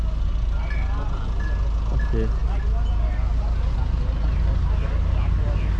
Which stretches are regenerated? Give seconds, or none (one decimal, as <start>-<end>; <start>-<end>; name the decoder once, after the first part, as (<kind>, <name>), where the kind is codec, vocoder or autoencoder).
none